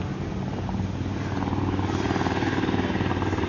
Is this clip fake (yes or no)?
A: no